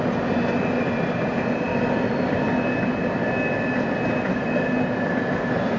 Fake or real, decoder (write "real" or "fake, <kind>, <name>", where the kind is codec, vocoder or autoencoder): real